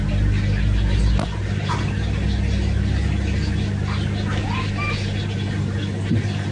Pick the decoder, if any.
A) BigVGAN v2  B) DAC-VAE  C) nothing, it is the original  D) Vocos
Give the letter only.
C